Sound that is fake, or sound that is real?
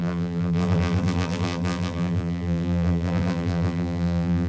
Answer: fake